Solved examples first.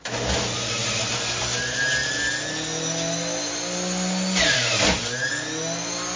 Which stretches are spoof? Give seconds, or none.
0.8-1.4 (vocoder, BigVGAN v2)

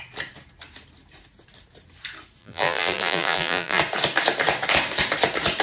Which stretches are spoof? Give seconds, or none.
2.4-3.8 (vocoder, BigVGAN v2)